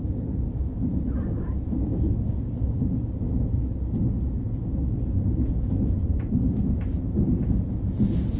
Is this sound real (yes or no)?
yes